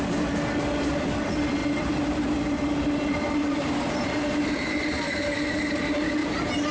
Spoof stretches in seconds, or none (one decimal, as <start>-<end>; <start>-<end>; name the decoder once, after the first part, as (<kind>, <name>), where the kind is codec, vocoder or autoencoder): 1.6-5.6 (vocoder, BigVGAN v2); 6.2-6.7